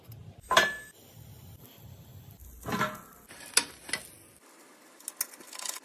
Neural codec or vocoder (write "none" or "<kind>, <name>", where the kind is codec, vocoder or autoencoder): none